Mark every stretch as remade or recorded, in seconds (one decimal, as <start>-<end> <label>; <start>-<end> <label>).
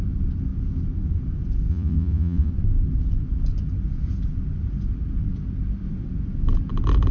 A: 0.0-1.7 recorded; 1.7-2.5 remade; 2.5-7.1 recorded